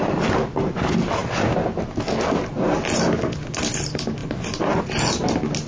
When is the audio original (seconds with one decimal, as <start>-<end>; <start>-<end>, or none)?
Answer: 0.0-5.7